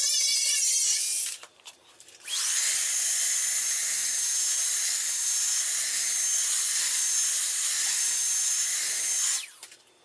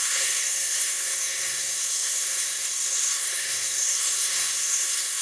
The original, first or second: first